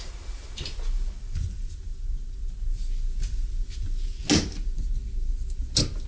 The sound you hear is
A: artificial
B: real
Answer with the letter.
B